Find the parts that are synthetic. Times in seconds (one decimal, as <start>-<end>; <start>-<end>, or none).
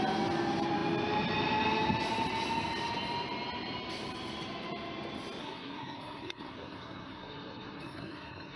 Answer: 5.4-8.6